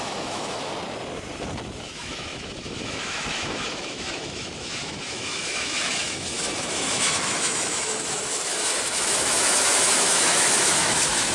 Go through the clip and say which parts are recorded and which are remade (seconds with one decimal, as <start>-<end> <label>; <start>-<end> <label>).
0.0-0.7 remade; 0.7-1.8 recorded; 1.8-11.3 remade